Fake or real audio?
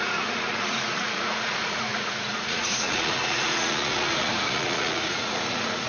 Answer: fake